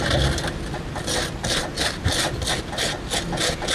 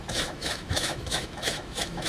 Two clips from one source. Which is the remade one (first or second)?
second